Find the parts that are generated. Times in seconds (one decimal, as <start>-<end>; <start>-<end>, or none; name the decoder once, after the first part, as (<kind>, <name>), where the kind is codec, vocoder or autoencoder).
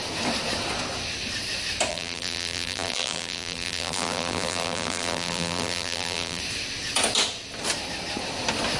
1.9-6.4 (vocoder, BigVGAN v2)